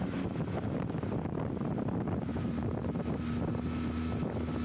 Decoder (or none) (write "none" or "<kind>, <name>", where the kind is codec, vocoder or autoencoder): none